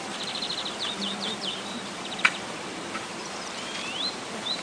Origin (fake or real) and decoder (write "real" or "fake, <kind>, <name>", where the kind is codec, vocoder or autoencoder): fake, vocoder, BigVGAN v2